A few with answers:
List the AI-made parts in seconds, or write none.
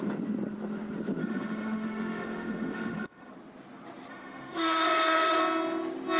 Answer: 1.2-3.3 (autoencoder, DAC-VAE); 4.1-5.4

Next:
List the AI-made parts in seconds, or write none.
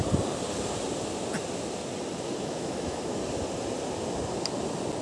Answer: 2.4-3.2 (autoencoder, DAC-VAE)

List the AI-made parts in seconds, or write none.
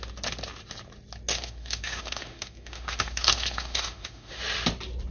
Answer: 1.3-4.4 (autoencoder, DAC-VAE)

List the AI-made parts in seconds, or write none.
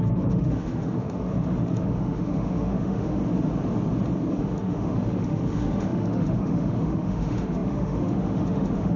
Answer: 0.0-3.2 (autoencoder, DAC-VAE); 4.3-9.0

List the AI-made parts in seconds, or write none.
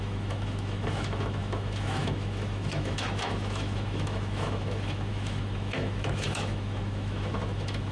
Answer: 0.0-7.9 (autoencoder, DAC-VAE)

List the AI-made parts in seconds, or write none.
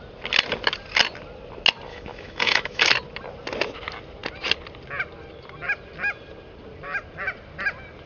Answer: 1.9-2.8 (autoencoder, DAC-VAE)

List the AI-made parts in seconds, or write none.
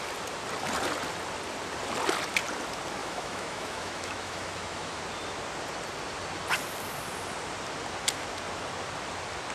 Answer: 3.0-5.0 (autoencoder, DAC-VAE)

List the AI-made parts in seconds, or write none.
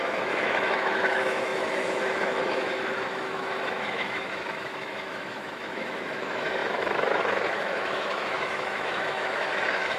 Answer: 0.0-10.0 (autoencoder, DAC-VAE)